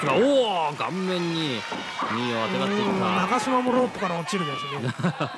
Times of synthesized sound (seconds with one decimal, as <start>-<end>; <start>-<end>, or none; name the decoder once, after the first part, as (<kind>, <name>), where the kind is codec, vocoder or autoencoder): 3.0-4.4 (vocoder, Vocos)